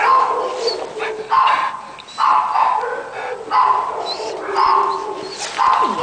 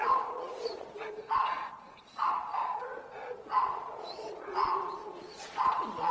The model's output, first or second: second